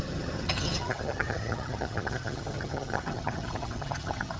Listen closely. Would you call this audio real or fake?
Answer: fake